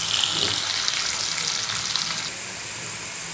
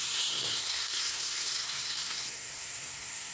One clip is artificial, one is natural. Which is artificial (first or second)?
second